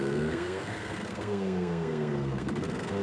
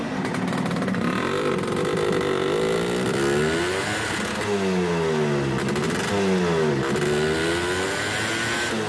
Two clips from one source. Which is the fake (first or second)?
first